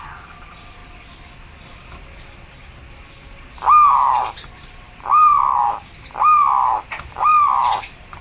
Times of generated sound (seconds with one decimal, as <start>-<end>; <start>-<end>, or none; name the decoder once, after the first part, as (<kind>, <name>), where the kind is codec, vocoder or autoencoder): 0.0-0.8 (vocoder, BigVGAN v2); 3.9-5.3; 7.0-8.2